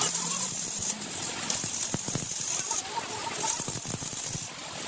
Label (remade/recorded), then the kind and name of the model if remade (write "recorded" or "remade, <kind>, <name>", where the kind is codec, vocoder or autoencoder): recorded